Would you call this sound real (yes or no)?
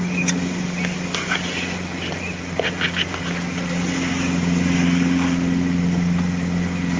yes